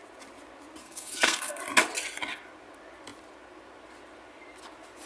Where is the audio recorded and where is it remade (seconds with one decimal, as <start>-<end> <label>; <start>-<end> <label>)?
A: 0.0-0.8 recorded; 0.8-1.6 remade; 1.6-5.1 recorded